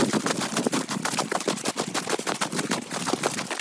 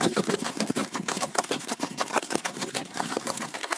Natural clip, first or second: first